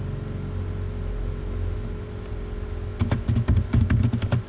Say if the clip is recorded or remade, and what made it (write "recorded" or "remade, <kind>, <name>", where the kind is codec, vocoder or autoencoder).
recorded